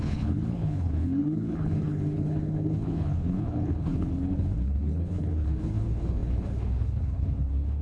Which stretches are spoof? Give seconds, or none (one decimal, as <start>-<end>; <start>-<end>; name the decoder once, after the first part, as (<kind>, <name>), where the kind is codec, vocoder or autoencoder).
0.0-7.8 (codec, HILCodec)